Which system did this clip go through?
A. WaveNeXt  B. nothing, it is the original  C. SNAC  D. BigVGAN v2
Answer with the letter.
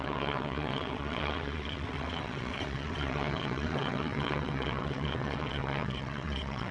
A